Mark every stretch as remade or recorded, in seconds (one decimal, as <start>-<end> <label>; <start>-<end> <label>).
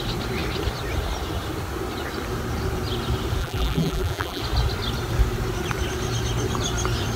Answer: 0.0-3.4 recorded; 3.4-4.4 remade; 4.4-7.2 recorded